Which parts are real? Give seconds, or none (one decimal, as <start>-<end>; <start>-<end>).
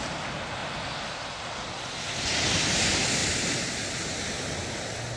0.0-5.2